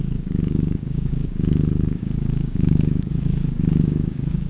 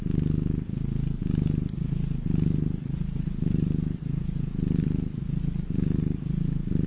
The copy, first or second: first